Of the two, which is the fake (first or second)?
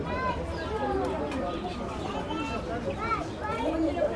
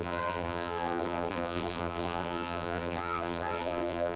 second